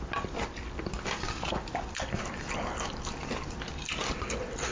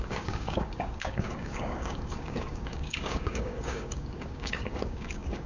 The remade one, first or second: second